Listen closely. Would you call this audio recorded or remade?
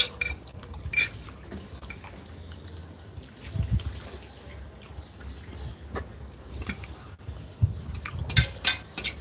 recorded